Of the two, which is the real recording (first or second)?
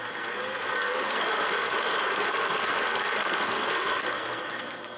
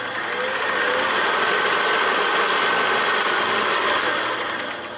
second